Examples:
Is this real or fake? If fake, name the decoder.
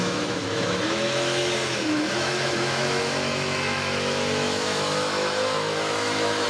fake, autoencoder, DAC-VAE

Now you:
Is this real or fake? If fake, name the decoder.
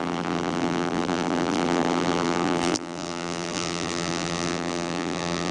fake, vocoder, BigVGAN v2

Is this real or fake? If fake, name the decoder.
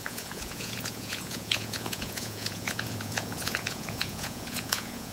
fake, vocoder, Vocos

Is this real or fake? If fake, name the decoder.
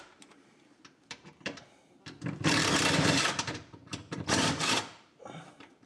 fake, vocoder, BigVGAN v2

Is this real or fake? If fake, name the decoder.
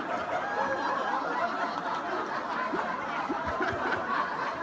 real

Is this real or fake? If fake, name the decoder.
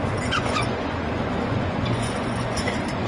fake, vocoder, Vocos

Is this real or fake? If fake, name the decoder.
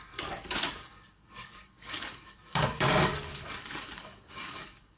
fake, codec, DAC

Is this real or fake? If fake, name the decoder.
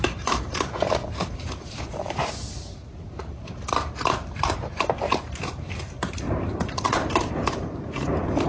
fake, vocoder, BigVGAN v2